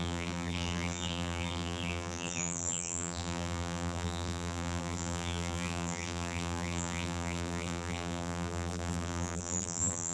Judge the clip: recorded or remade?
remade